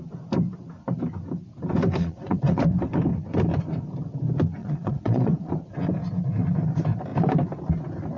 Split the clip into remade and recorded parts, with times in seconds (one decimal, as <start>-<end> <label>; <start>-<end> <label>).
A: 0.0-2.0 recorded; 2.0-2.6 remade; 2.6-4.6 recorded; 4.6-5.5 remade; 5.5-8.2 recorded